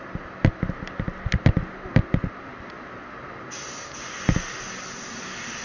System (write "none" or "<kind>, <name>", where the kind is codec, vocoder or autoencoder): none